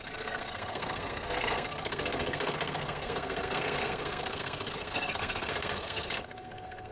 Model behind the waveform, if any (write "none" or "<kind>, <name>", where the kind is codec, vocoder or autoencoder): codec, SNAC